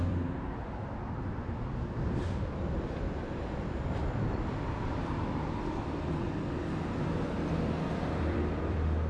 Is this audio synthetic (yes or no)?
yes